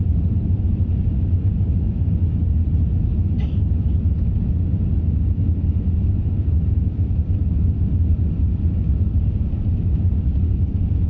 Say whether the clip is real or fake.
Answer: real